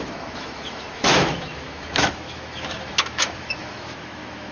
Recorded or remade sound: remade